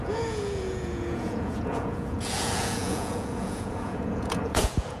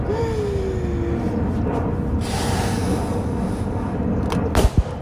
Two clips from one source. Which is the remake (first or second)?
first